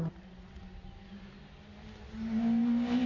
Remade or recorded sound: recorded